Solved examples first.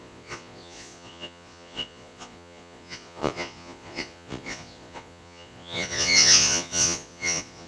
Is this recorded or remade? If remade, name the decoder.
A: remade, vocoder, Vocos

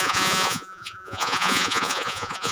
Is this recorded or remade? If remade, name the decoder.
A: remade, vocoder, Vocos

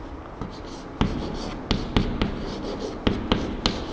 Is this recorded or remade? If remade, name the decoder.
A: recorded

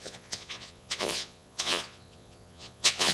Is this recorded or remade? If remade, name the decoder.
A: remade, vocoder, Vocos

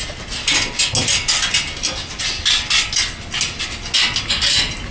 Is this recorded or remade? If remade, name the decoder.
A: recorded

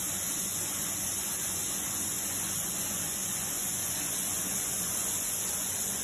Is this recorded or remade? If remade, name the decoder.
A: remade, vocoder, Vocos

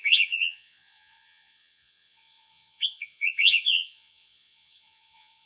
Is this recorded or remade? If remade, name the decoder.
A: remade, vocoder, Vocos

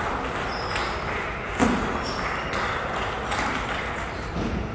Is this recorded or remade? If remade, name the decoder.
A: recorded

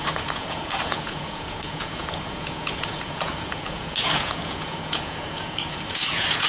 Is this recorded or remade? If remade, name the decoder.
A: remade, vocoder, Vocos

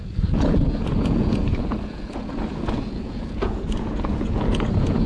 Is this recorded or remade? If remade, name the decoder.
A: remade, vocoder, Vocos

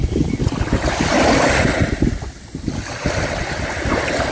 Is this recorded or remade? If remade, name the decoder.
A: recorded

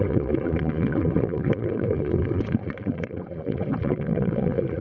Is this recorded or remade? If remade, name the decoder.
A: remade, vocoder, Vocos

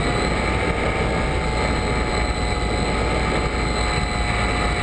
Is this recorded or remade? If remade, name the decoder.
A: recorded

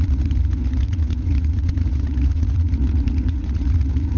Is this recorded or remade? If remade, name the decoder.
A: remade, vocoder, Vocos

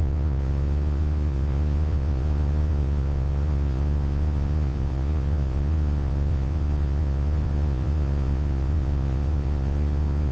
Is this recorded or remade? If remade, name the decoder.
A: remade, vocoder, Vocos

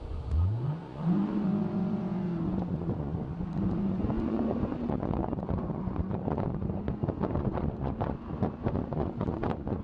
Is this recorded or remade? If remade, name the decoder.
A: remade, vocoder, Vocos